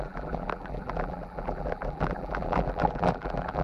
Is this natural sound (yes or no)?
no